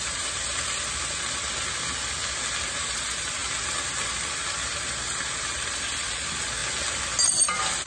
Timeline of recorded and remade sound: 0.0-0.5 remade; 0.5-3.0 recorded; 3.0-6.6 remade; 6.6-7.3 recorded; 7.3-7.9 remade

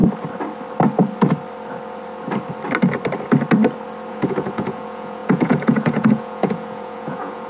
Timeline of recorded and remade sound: 0.0-4.1 recorded; 4.1-7.5 remade

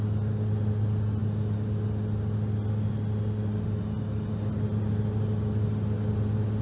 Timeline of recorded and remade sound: 0.0-6.6 recorded

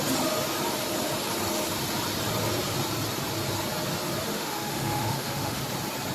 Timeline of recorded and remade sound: 0.0-4.3 recorded; 4.3-5.6 remade; 5.6-6.1 recorded

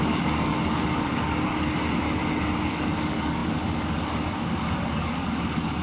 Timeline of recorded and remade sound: 0.0-2.2 remade; 2.2-2.7 recorded; 2.7-5.8 remade

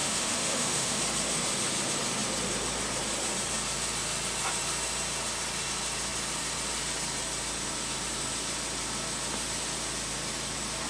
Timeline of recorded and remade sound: 0.0-1.0 remade; 1.0-10.9 recorded

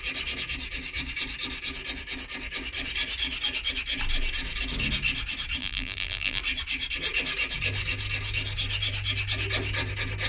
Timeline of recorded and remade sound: 0.0-5.6 recorded; 5.6-6.4 remade; 6.4-10.3 recorded

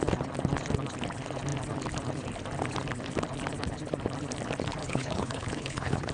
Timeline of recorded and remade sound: 0.0-4.8 recorded; 4.8-6.1 remade